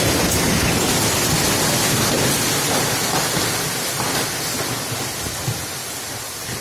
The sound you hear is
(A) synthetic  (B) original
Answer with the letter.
B